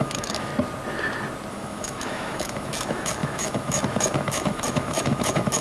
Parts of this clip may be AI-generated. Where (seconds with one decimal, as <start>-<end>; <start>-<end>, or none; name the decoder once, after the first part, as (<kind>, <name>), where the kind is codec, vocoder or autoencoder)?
0.0-0.5 (autoencoder, DAC-VAE); 1.5-5.6